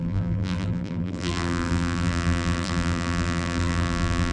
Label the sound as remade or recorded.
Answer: remade